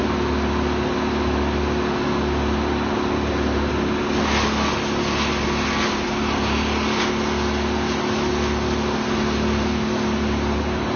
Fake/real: real